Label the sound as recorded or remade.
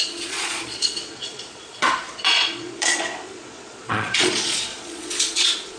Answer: remade